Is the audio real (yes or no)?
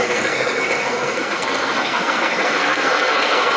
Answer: no